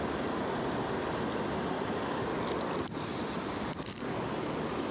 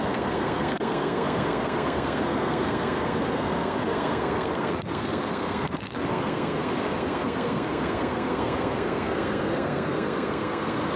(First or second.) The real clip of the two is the first